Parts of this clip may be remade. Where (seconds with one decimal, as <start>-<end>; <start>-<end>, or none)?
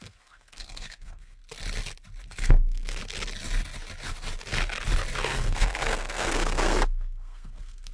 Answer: 0.0-1.4; 2.3-3.0; 5.3-7.9